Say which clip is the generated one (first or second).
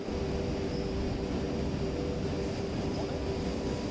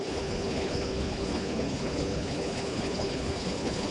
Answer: second